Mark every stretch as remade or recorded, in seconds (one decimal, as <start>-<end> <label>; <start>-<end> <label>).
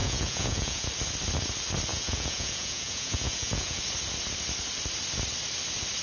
0.0-0.9 remade; 0.9-1.9 recorded; 1.9-3.8 remade; 3.8-6.0 recorded